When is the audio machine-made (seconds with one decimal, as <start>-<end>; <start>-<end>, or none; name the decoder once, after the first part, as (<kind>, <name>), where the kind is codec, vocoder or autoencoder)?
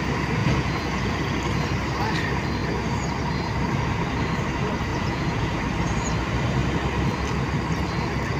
0.4-1.1 (vocoder, Vocos); 4.9-5.6